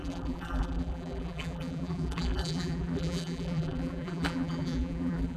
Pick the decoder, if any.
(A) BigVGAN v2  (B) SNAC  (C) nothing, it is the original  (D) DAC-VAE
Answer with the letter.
A